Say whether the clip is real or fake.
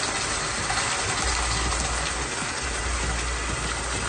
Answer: real